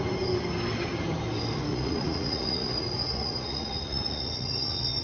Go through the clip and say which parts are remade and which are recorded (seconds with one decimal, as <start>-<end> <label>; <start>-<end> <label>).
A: 0.0-1.7 recorded; 1.7-5.0 remade

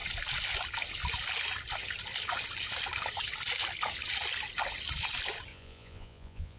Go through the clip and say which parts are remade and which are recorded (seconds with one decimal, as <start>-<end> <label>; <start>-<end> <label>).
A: 0.0-5.5 recorded; 5.5-6.6 remade

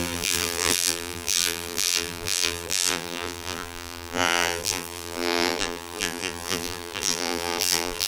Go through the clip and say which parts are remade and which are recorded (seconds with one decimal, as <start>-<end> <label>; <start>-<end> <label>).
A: 0.0-8.1 remade

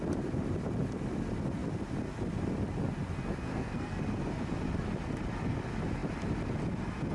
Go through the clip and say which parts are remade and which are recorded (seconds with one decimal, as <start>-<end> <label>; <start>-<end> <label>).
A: 0.0-3.5 recorded; 3.5-4.0 remade; 4.0-7.1 recorded

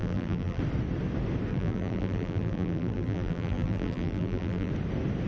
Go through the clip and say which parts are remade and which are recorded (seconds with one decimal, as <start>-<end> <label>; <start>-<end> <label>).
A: 0.0-0.6 remade; 0.6-1.5 recorded; 1.5-4.7 remade; 4.7-5.3 recorded

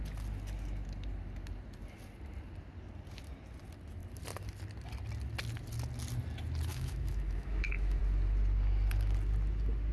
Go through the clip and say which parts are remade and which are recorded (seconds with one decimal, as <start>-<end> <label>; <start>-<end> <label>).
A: 0.0-6.7 recorded; 6.7-8.0 remade; 8.0-9.9 recorded

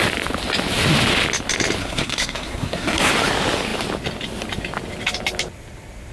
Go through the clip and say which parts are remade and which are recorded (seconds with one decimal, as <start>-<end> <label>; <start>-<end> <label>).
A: 0.0-1.8 recorded; 1.8-3.1 remade; 3.1-6.1 recorded

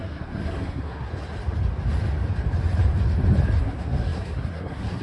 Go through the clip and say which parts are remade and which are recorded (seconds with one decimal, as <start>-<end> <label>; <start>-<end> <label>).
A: 0.0-1.1 remade; 1.1-3.6 recorded; 3.6-5.0 remade